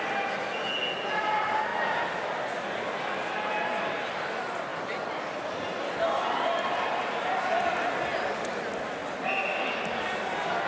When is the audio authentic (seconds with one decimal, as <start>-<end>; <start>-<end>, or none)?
0.0-4.7; 7.0-10.7